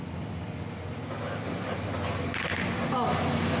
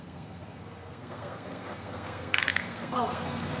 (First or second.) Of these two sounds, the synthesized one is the second